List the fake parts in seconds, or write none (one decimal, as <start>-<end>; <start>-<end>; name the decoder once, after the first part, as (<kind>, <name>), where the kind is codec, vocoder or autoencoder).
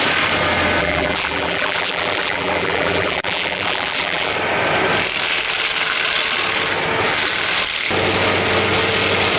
0.8-4.3 (vocoder, BigVGAN v2)